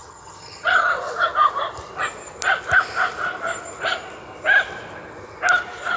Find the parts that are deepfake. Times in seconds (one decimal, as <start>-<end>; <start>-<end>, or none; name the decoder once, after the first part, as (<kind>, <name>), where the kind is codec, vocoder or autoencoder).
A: 0.0-0.9 (vocoder, HiFi-GAN)